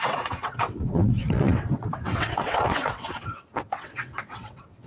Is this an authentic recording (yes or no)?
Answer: no